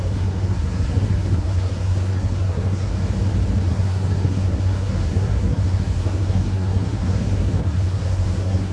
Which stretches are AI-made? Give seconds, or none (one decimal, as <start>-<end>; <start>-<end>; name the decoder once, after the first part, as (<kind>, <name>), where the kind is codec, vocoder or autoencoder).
0.0-2.9 (codec, SNAC); 3.7-8.7